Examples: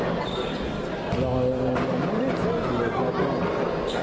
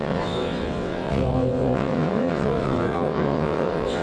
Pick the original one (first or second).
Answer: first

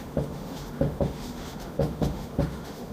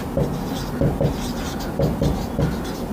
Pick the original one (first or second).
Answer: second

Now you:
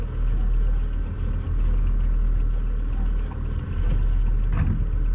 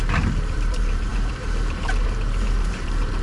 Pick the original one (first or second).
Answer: first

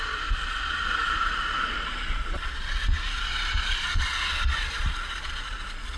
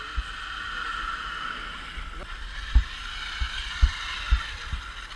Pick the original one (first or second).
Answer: second